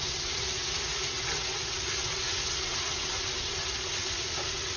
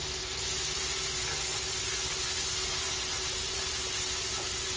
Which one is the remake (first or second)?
first